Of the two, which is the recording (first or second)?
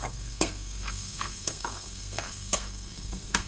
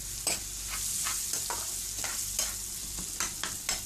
second